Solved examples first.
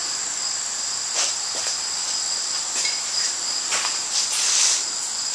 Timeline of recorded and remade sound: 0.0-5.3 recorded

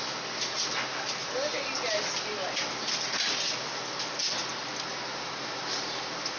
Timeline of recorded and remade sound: 0.0-6.4 recorded

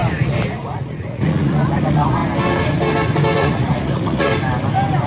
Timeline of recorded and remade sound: 0.0-2.2 remade; 2.2-3.4 recorded; 3.4-4.3 remade; 4.3-5.1 recorded

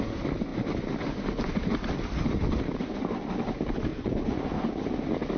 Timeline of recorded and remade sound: 0.0-3.9 recorded; 3.9-4.4 remade; 4.4-5.4 recorded